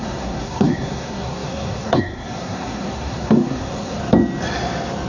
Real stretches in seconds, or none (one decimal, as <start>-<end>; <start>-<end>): 4.0-5.1